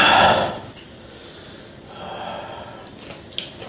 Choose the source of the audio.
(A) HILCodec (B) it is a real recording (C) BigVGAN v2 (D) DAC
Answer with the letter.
B